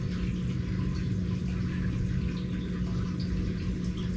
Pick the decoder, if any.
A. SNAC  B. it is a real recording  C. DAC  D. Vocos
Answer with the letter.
B